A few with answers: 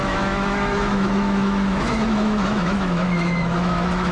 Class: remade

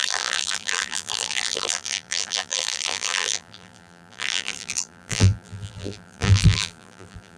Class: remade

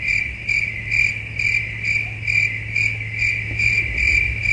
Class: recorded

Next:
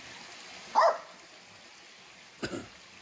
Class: recorded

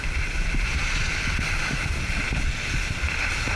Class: recorded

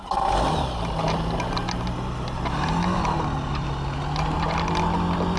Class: recorded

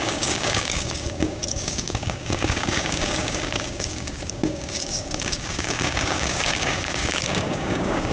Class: remade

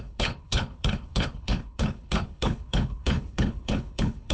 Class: remade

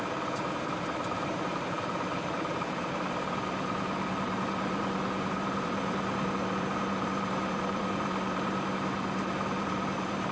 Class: remade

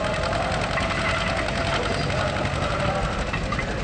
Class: recorded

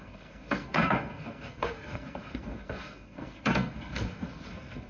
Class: remade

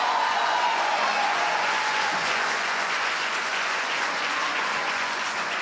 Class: remade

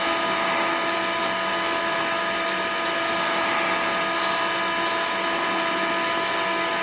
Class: recorded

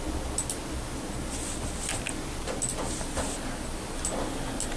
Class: recorded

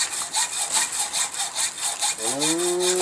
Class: recorded